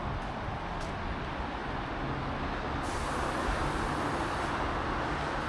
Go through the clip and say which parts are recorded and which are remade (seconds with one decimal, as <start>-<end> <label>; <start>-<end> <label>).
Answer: 0.0-5.5 recorded